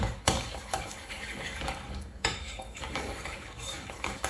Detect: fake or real fake